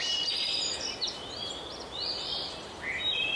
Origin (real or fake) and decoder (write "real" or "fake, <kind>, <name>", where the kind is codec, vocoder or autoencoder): fake, vocoder, BigVGAN v2